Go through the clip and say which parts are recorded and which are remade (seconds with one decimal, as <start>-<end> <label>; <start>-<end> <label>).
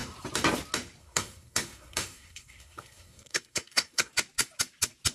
0.0-1.0 recorded; 1.0-4.1 remade; 4.1-5.1 recorded